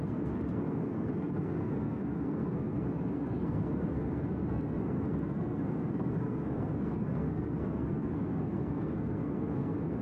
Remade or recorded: remade